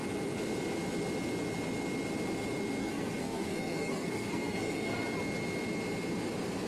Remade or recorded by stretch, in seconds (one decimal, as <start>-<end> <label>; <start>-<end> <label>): 0.0-2.8 recorded; 2.8-5.0 remade; 5.0-6.7 recorded